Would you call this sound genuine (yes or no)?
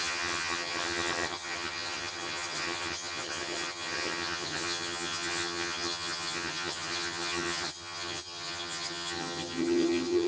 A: no